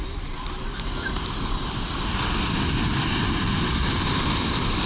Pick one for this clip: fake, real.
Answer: real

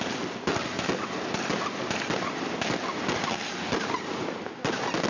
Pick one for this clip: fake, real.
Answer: real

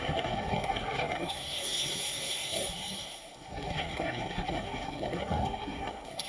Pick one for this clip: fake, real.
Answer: fake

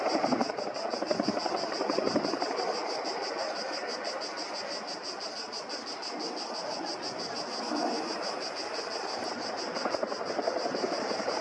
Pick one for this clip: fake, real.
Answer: real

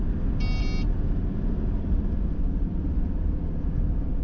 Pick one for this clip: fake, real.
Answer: real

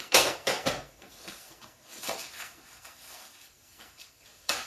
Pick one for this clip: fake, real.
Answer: fake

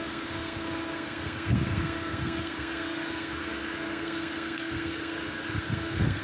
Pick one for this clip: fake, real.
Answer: fake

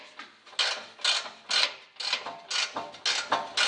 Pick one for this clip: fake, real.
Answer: real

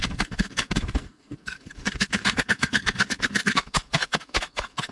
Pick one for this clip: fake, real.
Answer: fake